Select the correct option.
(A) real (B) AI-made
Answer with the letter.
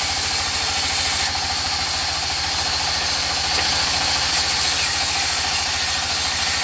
A